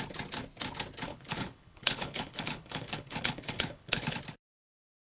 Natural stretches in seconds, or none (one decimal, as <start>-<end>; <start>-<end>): 0.0-1.1; 4.2-5.1